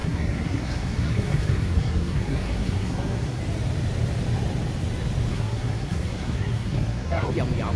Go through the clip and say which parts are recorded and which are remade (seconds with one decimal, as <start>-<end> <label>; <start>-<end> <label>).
0.0-3.4 remade; 3.4-5.3 recorded; 5.3-7.3 remade; 7.3-7.8 recorded